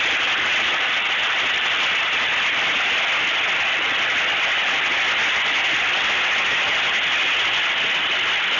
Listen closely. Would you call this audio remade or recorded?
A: recorded